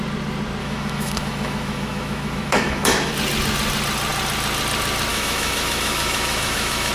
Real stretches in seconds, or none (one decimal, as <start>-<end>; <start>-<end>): 0.0-0.6; 3.1-5.1